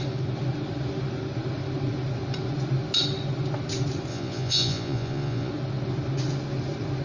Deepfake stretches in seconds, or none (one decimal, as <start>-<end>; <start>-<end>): 4.1-5.5